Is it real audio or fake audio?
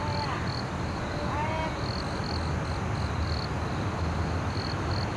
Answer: real